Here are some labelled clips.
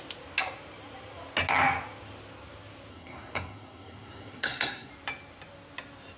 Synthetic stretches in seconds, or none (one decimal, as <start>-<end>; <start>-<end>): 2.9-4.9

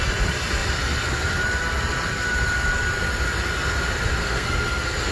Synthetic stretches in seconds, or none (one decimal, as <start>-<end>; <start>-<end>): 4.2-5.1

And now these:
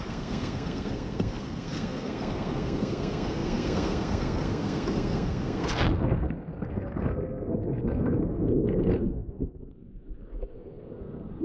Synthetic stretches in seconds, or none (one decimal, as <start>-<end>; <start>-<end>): 0.0-11.4

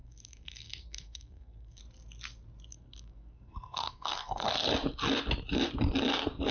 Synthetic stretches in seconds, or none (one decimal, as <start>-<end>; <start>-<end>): 0.0-1.8; 2.7-4.5

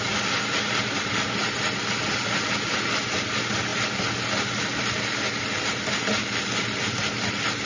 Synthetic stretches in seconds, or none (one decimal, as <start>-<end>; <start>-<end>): none